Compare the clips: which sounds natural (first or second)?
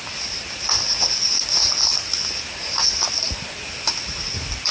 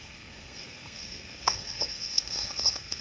first